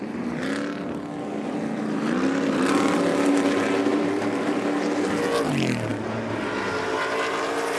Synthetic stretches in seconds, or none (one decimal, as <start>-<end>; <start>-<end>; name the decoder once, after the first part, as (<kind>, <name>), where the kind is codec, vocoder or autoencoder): 3.9-4.8 (vocoder, BigVGAN v2)